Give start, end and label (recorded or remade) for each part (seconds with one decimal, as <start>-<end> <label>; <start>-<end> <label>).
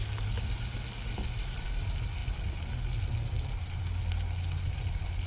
0.0-5.3 recorded